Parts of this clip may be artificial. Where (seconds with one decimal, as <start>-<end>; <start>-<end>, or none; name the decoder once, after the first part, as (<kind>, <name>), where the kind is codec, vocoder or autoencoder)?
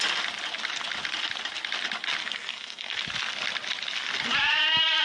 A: 2.2-3.0 (codec, SNAC)